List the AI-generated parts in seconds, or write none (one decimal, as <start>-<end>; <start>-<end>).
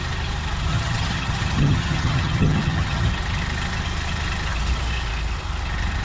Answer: 0.7-3.1